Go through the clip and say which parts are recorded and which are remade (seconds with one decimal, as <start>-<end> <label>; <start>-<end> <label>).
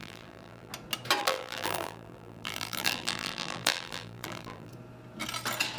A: 0.0-0.7 remade; 0.7-1.2 recorded; 1.2-4.7 remade; 4.7-5.8 recorded